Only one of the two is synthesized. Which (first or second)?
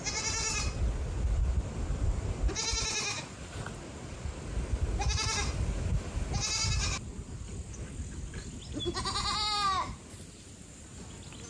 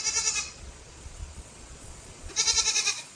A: second